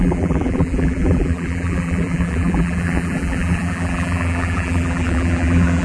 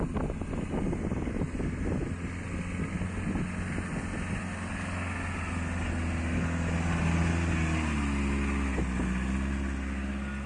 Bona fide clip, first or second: second